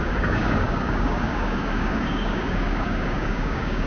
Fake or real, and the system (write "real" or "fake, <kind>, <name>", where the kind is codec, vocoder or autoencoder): fake, codec, DAC